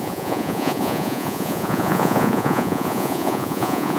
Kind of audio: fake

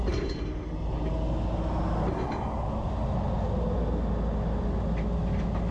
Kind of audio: real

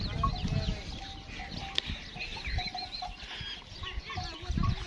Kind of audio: real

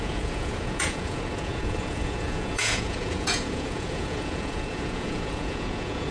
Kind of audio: fake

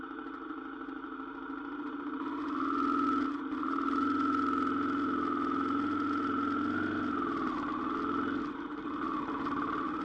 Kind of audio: real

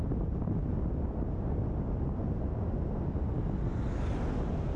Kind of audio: real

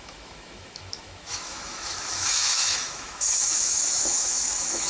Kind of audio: fake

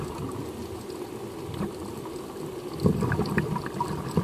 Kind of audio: real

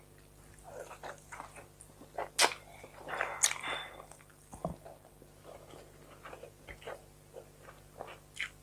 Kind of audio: real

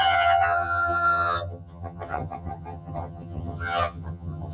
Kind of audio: fake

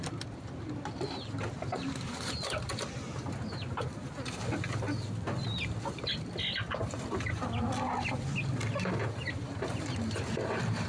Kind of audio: real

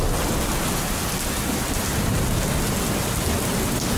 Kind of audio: real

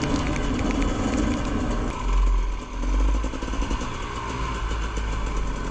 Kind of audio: real